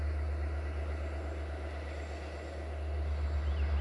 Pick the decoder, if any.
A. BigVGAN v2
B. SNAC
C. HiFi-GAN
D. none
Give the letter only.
D